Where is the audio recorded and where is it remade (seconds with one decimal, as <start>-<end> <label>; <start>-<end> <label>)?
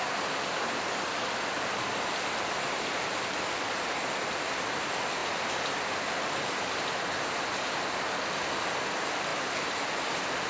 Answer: 0.0-10.5 recorded